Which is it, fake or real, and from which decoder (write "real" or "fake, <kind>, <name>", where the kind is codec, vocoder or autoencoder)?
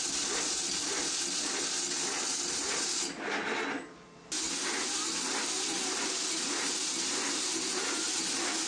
real